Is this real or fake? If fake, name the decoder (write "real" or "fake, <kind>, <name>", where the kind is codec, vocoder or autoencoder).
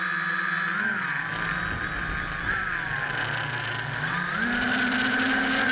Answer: real